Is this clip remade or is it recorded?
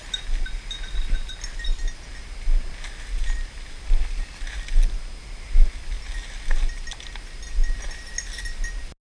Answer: recorded